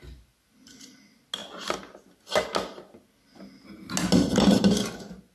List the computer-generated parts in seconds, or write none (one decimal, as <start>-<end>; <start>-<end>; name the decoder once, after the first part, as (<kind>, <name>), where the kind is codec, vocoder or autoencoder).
none